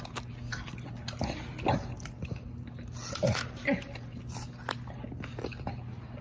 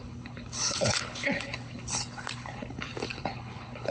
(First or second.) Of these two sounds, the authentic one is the first